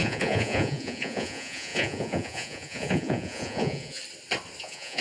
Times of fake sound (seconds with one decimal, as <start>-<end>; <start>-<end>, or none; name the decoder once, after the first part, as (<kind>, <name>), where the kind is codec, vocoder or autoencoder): 0.0-4.0 (vocoder, Vocos); 4.6-5.0

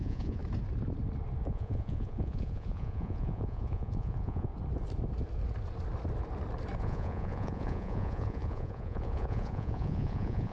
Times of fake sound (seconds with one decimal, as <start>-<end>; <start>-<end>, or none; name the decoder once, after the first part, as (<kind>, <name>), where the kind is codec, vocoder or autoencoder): 0.0-0.4 (vocoder, Vocos); 1.4-4.5; 6.8-10.5